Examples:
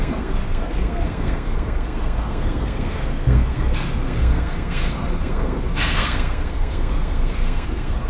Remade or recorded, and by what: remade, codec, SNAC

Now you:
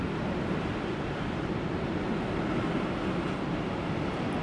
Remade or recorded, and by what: recorded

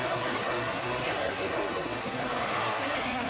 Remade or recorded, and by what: remade, codec, SNAC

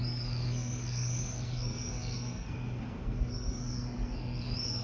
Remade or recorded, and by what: remade, codec, SNAC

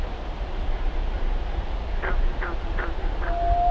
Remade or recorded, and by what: recorded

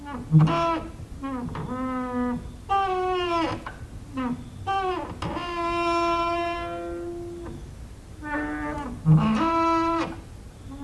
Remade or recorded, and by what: recorded